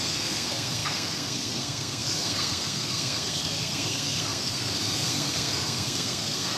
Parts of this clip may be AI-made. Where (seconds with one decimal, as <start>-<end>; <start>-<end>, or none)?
0.0-6.6